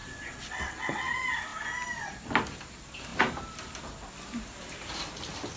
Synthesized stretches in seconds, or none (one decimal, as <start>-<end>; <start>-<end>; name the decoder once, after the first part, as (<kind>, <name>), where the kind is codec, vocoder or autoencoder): 0.0-1.1 (vocoder, WaveNeXt)